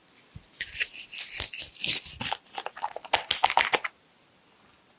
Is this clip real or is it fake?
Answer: real